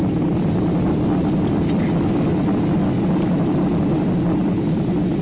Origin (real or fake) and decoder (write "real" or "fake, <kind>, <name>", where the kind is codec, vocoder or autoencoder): real